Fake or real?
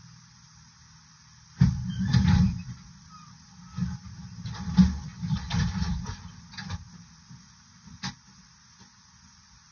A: real